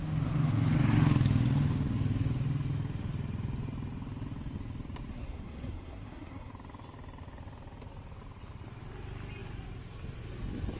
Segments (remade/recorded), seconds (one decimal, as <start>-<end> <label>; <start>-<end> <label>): 0.0-5.1 recorded; 5.1-6.5 remade; 6.5-10.8 recorded